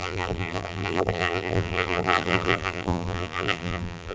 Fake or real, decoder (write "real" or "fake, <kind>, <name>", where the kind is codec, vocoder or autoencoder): fake, vocoder, BigVGAN v2